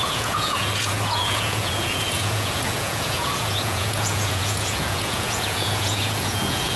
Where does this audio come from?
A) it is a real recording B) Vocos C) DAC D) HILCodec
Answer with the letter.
B